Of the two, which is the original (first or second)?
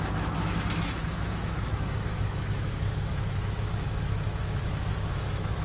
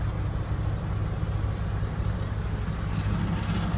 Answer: second